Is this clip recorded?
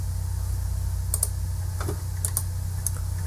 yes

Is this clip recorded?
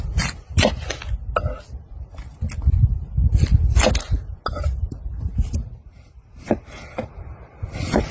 yes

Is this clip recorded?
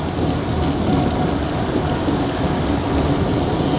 yes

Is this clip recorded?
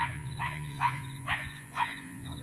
no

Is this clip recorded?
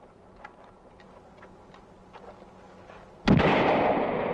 yes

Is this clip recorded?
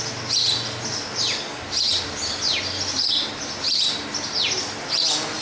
yes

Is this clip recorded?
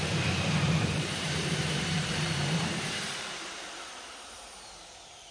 no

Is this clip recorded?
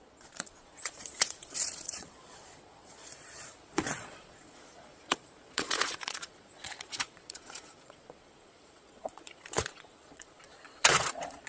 no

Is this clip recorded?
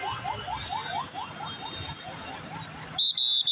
yes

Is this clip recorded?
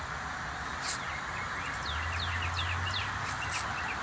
yes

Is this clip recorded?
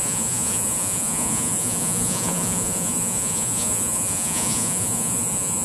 no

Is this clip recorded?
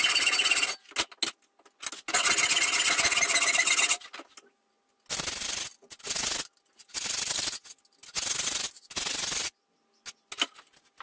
yes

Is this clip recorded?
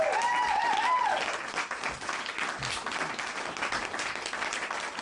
yes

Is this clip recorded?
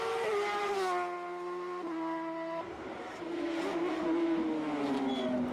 yes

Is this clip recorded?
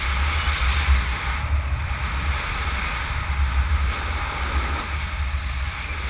yes